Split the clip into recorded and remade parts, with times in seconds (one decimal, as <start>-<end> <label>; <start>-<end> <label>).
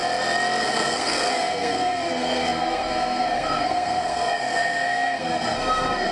0.0-0.6 recorded; 0.6-6.1 remade